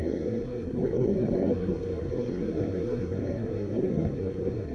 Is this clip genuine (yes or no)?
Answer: no